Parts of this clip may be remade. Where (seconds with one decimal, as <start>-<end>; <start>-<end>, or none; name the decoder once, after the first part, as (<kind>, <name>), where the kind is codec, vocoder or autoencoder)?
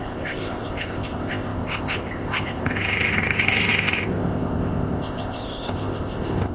0.0-6.5 (codec, ZipCodec)